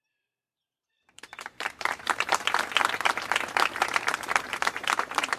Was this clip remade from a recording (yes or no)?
yes